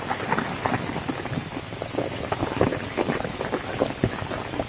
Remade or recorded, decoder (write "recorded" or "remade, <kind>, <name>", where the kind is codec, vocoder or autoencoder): recorded